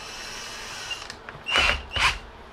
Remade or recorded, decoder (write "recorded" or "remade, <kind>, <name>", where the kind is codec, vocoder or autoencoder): recorded